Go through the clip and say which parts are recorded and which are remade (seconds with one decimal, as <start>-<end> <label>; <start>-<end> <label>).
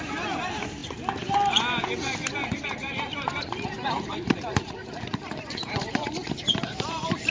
0.0-0.8 remade; 0.8-3.4 recorded; 3.4-7.3 remade